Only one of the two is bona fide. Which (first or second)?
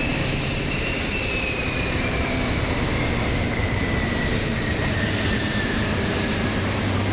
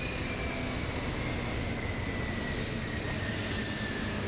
second